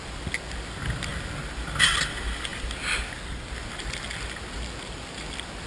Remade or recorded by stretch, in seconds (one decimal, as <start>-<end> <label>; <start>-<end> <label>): 0.0-5.7 recorded